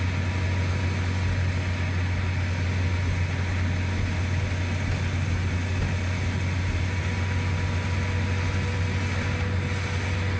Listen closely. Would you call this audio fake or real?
real